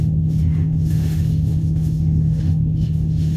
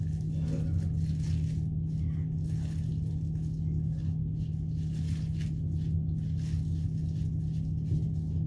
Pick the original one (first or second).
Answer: second